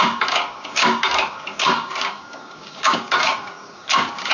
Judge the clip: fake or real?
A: fake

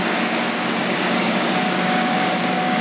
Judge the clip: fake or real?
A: fake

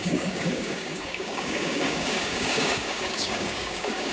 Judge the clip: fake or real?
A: fake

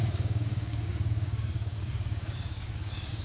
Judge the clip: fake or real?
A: fake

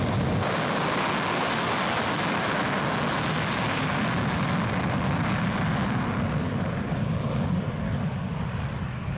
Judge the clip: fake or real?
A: real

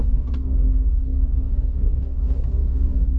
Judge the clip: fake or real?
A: fake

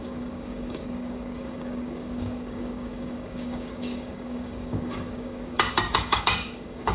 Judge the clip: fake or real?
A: fake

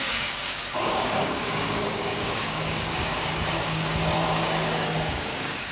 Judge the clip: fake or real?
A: fake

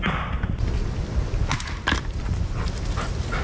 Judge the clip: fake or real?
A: real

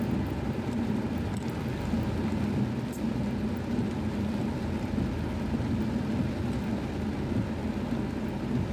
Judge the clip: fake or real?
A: real